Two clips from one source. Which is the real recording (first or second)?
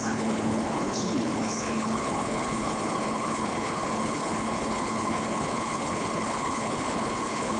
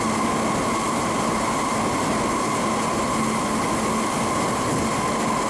second